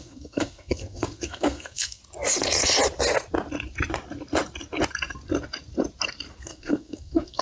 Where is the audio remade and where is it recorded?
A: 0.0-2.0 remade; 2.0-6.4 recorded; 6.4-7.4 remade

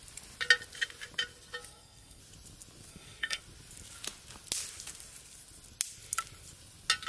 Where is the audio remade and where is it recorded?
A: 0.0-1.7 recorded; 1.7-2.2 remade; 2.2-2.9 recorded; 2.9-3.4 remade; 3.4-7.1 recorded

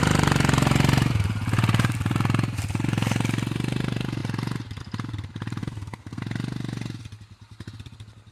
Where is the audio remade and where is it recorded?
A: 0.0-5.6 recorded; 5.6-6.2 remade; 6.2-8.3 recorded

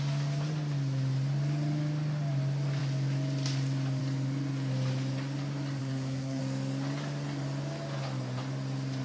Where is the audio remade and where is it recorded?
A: 0.0-5.8 recorded; 5.8-6.4 remade; 6.4-9.0 recorded

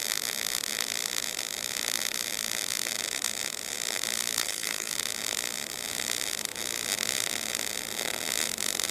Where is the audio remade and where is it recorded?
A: 0.0-4.4 recorded; 4.4-4.9 remade; 4.9-8.9 recorded

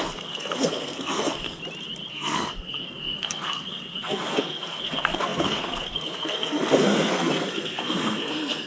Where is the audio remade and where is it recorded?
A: 0.0-1.6 remade; 1.6-2.1 recorded; 2.1-8.7 remade

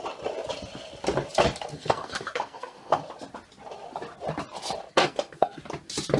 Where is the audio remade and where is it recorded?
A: 0.0-1.7 recorded; 1.7-3.0 remade; 3.0-4.9 recorded; 4.9-5.6 remade; 5.6-6.2 recorded